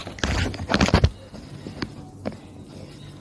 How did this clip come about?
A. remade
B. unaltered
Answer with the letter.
B